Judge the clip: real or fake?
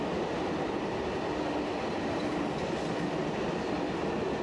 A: real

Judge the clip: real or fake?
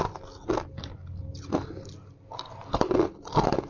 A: real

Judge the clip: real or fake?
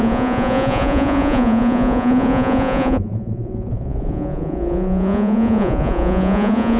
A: fake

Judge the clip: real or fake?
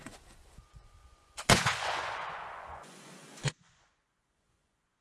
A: fake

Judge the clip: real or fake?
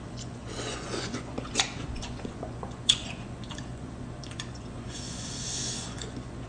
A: fake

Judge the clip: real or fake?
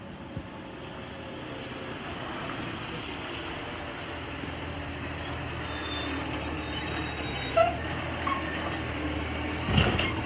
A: real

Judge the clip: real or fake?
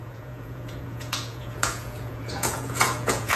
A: fake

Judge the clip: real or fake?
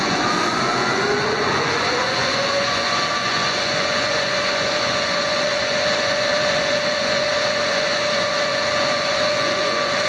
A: fake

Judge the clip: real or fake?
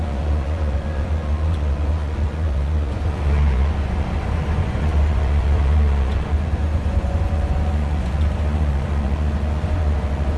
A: fake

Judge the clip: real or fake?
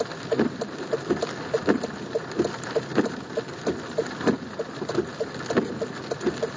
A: real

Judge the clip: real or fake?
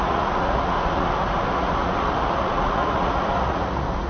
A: fake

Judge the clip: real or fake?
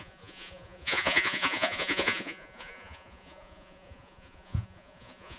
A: fake